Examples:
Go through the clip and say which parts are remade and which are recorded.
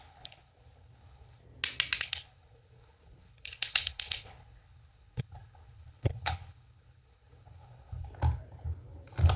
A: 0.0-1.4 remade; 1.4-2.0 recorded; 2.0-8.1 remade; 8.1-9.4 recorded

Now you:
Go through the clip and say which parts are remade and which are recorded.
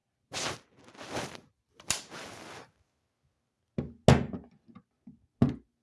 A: 0.0-5.8 recorded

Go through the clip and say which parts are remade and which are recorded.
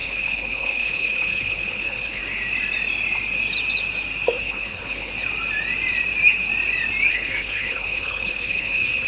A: 0.0-2.2 remade; 2.2-4.4 recorded; 4.4-5.1 remade; 5.1-7.1 recorded; 7.1-9.1 remade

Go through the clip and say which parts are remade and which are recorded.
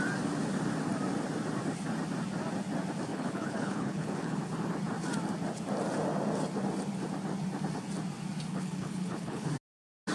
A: 0.0-3.1 recorded; 3.1-4.4 remade; 4.4-8.5 recorded; 8.5-9.5 remade; 9.5-10.1 recorded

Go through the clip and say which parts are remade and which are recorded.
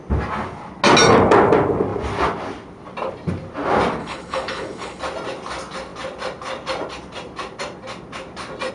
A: 0.0-4.0 recorded; 4.0-5.0 remade; 5.0-8.7 recorded